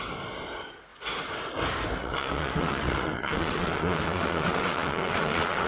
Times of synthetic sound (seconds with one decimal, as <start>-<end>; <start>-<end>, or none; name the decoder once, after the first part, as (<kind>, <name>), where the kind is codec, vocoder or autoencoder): 2.0-5.7 (vocoder, WaveNeXt)